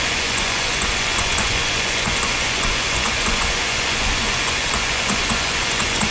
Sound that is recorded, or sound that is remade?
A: remade